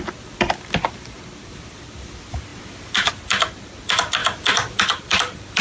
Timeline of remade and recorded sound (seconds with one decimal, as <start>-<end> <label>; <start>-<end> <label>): 0.0-2.5 remade; 2.5-3.1 recorded; 3.1-4.2 remade; 4.2-4.8 recorded; 4.8-5.6 remade